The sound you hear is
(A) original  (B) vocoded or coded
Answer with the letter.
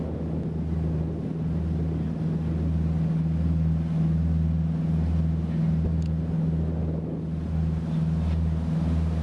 A